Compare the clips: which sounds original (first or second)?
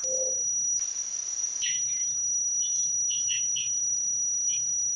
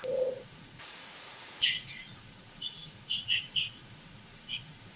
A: first